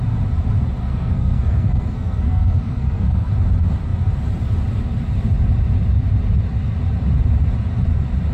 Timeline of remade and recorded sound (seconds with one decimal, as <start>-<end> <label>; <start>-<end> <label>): 0.0-0.8 recorded; 0.8-3.3 remade; 3.3-8.3 recorded